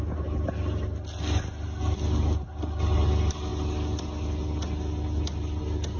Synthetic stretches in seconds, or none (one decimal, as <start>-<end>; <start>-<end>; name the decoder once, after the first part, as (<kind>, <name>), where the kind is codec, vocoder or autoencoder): none